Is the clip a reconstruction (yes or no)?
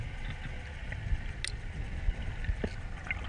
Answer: no